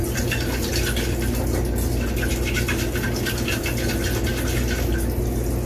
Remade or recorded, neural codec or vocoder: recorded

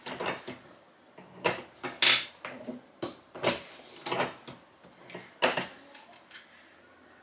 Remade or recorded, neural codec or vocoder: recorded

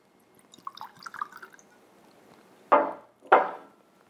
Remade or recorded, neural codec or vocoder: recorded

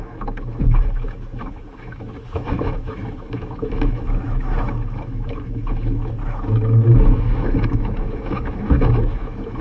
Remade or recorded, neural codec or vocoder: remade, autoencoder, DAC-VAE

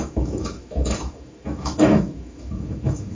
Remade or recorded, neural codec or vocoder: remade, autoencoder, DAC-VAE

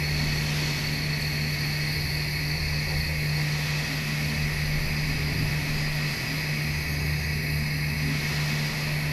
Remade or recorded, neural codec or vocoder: recorded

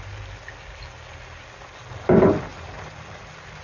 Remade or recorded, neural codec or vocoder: recorded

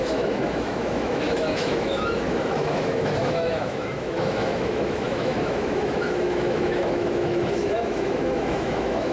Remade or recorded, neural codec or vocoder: remade, autoencoder, DAC-VAE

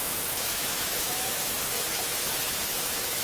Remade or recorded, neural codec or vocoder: remade, autoencoder, DAC-VAE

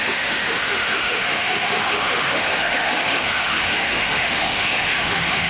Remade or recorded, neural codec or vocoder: remade, autoencoder, DAC-VAE